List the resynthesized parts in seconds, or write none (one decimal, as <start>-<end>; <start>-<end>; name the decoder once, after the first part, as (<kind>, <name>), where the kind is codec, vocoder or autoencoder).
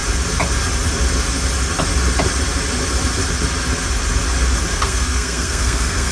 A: 4.7-6.1 (codec, SNAC)